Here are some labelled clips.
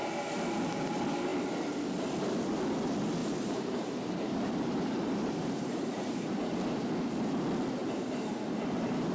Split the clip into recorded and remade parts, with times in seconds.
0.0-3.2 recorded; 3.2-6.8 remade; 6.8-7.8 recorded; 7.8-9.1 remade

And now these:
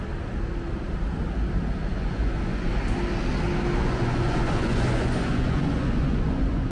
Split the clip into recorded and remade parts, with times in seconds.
0.0-1.9 recorded; 1.9-2.7 remade; 2.7-3.8 recorded; 3.8-6.7 remade

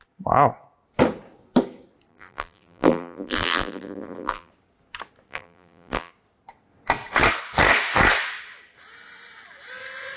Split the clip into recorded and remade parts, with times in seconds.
0.0-2.1 recorded; 2.1-4.5 remade; 4.5-5.3 recorded; 5.3-6.1 remade; 6.1-10.2 recorded

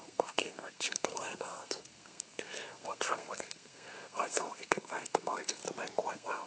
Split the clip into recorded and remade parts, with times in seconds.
0.0-5.6 remade; 5.6-6.1 recorded; 6.1-6.5 remade

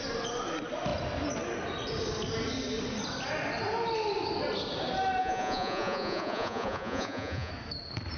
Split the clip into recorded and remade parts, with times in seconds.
0.0-5.2 recorded; 5.2-7.5 remade; 7.5-8.2 recorded

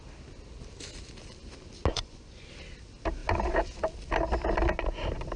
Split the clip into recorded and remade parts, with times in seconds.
0.0-1.9 recorded; 1.9-2.5 remade; 2.5-5.4 recorded

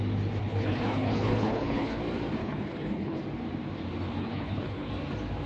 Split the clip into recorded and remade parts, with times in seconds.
0.0-0.4 recorded; 0.4-2.0 remade; 2.0-2.4 recorded; 2.4-3.2 remade; 3.2-4.2 recorded; 4.2-4.9 remade; 4.9-5.5 recorded

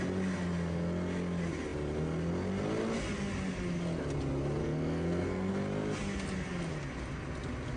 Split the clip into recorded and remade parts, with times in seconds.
0.0-4.6 recorded; 4.6-5.5 remade; 5.5-7.8 recorded